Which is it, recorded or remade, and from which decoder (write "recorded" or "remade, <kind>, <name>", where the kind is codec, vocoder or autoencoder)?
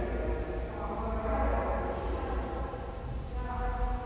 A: recorded